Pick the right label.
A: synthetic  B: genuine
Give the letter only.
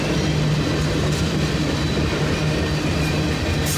B